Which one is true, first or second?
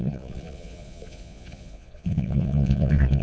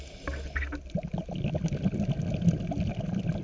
second